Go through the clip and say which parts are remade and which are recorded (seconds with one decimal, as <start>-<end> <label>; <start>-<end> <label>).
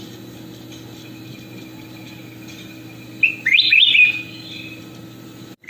0.0-5.7 recorded